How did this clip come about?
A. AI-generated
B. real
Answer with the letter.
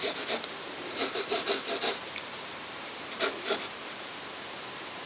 A